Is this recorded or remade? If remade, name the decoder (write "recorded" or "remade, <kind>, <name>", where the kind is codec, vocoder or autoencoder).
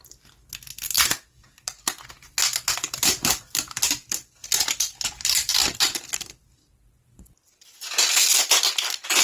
recorded